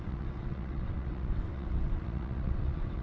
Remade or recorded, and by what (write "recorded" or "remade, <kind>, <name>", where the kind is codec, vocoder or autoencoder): remade, vocoder, WaveNeXt